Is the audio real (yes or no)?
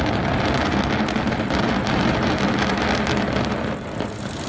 yes